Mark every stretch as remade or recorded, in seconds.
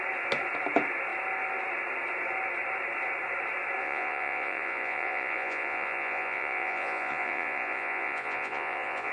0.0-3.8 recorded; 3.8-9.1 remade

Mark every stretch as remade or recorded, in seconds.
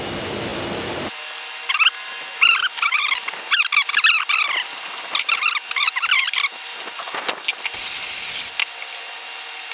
0.0-9.7 recorded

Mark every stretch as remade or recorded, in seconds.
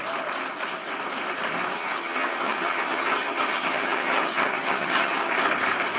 0.0-1.7 recorded; 1.7-5.3 remade; 5.3-6.0 recorded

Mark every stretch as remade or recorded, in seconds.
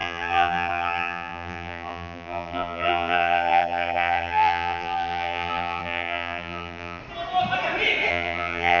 0.0-7.0 remade; 7.0-8.1 recorded; 8.1-8.8 remade